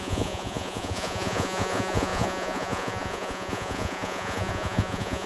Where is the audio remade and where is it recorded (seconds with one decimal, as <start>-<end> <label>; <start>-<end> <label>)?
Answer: 0.0-5.3 remade